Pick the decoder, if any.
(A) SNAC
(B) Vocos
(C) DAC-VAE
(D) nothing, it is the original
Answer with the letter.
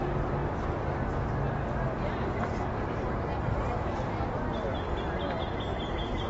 D